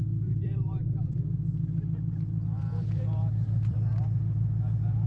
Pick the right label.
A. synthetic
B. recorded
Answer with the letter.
A